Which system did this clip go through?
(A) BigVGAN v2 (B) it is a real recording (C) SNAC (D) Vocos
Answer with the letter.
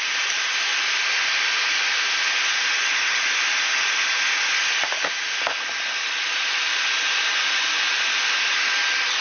B